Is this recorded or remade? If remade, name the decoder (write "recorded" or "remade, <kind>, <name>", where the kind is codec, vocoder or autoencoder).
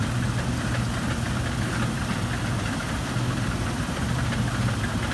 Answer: recorded